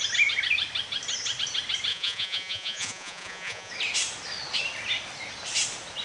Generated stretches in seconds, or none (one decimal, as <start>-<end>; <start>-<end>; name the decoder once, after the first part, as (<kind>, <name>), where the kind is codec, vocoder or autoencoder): 1.9-3.7 (vocoder, Vocos)